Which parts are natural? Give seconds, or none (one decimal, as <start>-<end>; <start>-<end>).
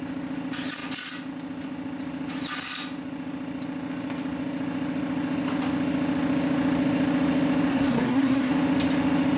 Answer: 0.0-7.7; 8.5-9.4